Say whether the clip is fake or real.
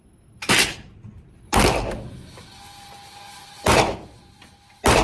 real